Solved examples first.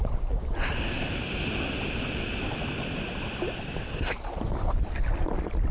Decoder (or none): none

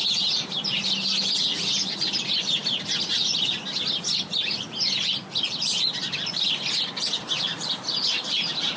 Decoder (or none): none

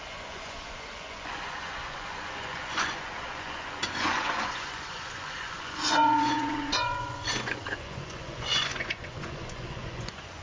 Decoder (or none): vocoder, Vocos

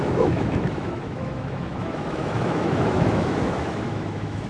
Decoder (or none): autoencoder, DAC-VAE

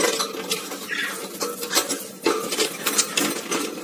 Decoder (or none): none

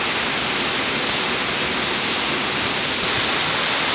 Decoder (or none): none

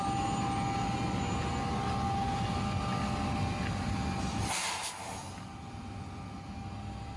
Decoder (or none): none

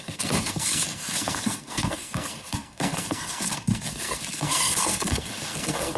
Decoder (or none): codec, SNAC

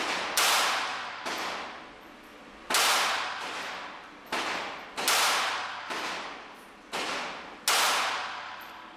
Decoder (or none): none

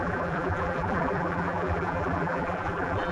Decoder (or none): vocoder, BigVGAN v2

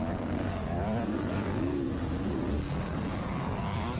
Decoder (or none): vocoder, BigVGAN v2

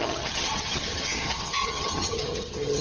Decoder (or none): vocoder, HiFi-GAN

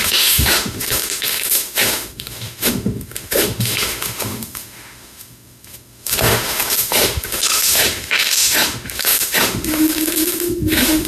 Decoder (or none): autoencoder, DAC-VAE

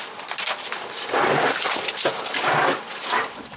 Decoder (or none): none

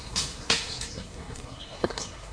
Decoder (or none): codec, SNAC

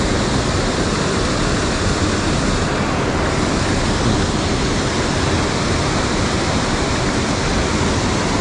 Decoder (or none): none